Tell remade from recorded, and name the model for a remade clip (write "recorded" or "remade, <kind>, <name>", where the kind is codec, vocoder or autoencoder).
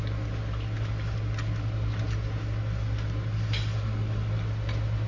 recorded